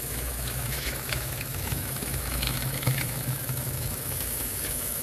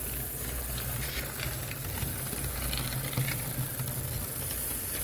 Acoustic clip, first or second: second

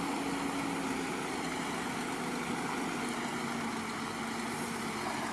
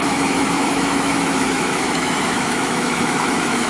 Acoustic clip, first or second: first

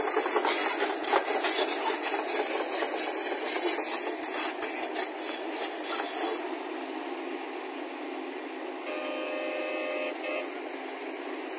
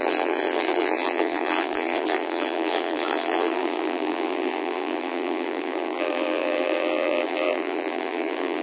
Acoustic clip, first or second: first